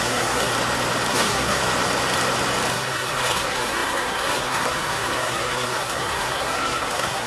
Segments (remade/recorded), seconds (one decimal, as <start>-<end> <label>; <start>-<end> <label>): 0.0-0.5 remade; 0.5-1.1 recorded; 1.1-1.6 remade; 1.6-2.7 recorded; 2.7-7.3 remade